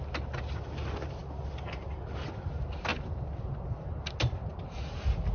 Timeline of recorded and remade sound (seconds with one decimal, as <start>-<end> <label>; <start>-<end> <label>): 0.0-5.3 recorded